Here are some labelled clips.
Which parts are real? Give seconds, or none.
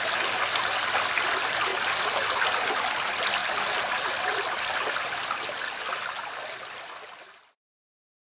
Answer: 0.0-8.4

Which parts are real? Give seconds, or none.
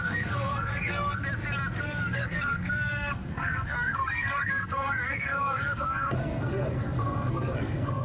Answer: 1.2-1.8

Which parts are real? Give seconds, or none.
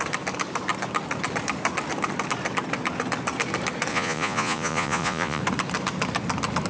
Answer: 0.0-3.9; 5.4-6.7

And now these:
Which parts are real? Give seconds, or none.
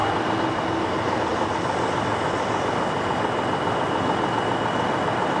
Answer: 0.0-5.4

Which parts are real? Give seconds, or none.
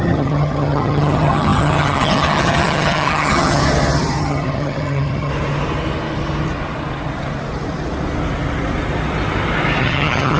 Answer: 3.6-4.2; 5.3-9.8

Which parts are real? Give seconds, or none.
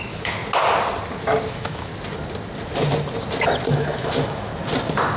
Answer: 0.4-1.5; 1.9-3.7; 4.5-5.2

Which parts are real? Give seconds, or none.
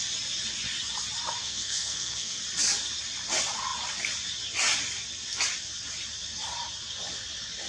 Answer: 0.0-1.4; 2.4-7.7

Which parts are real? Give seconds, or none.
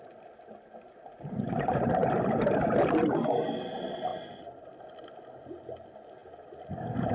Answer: 0.0-7.1